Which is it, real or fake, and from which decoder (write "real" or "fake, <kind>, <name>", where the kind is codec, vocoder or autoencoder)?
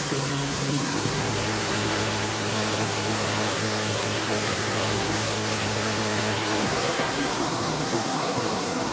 fake, codec, SNAC